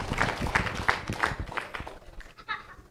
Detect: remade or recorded recorded